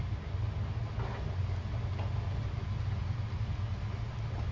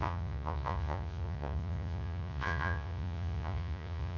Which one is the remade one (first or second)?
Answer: second